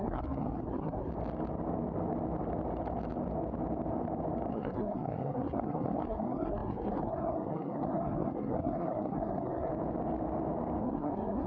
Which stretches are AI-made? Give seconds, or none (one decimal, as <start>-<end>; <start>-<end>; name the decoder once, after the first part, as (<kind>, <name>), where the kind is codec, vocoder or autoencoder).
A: 0.0-1.1 (codec, SNAC); 4.5-9.7; 10.8-11.5